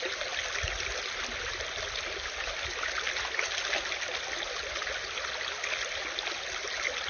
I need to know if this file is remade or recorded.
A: recorded